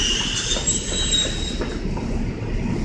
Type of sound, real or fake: real